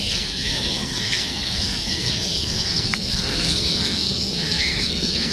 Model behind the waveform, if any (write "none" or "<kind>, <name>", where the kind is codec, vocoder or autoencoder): codec, SNAC